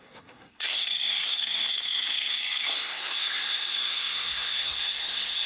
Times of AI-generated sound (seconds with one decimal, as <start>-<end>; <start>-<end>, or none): 0.0-5.5